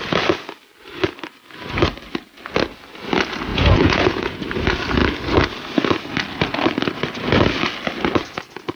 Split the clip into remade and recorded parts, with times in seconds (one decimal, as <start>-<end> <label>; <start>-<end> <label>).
0.0-3.5 recorded; 3.5-4.4 remade; 4.4-8.8 recorded